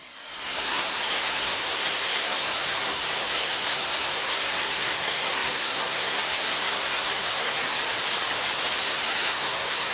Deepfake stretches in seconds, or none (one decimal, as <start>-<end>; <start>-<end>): 0.0-7.8; 8.8-9.9